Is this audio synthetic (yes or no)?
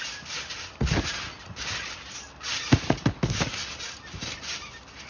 no